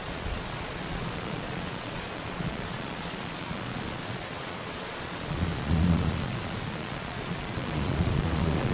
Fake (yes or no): yes